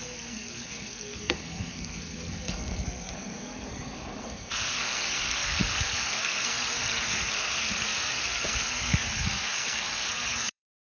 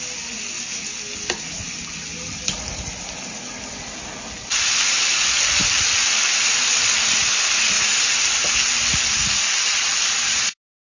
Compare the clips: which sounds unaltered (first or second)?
second